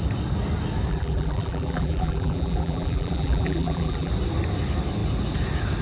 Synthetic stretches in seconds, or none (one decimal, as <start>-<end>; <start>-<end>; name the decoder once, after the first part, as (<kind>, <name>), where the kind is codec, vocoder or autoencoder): 0.9-4.1 (vocoder, BigVGAN v2)